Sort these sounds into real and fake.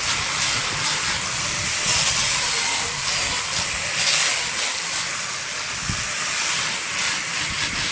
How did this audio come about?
real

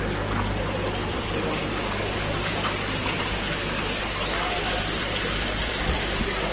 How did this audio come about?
real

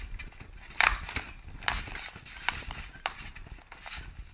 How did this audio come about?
real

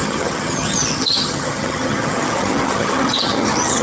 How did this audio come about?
fake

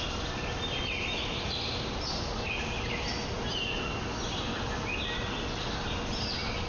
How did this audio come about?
real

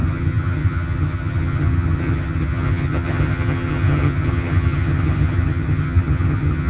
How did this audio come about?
fake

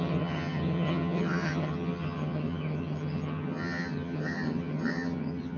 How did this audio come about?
fake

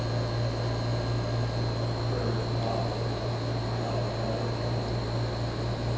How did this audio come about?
real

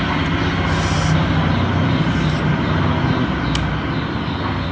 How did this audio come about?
real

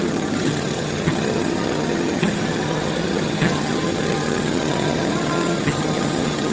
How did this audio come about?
fake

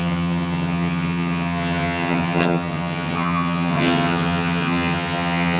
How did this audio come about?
fake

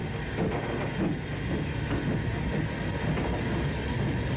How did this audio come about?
real